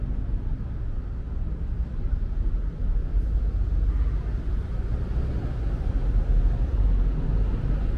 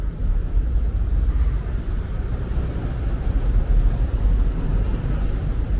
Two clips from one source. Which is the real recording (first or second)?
first